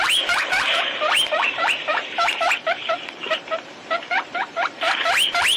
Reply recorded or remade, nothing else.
remade